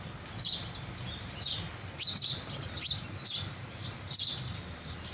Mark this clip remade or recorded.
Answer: recorded